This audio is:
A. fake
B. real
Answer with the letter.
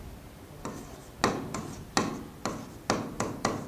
B